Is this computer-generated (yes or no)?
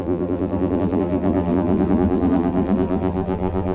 yes